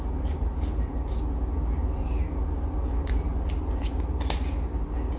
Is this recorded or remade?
recorded